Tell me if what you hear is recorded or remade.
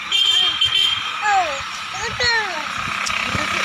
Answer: recorded